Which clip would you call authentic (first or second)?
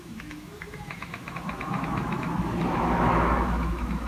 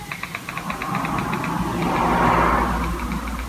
second